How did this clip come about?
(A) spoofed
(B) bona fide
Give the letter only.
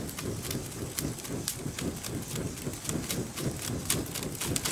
B